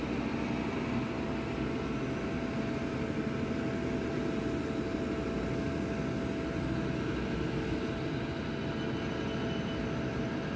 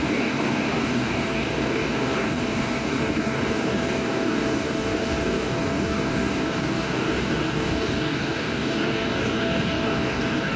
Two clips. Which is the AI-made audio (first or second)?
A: second